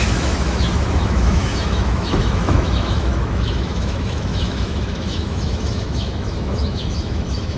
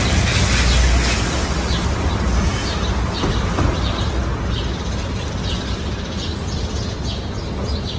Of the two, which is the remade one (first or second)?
first